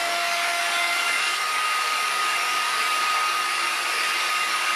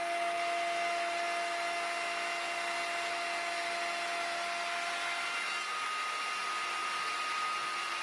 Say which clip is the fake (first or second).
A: first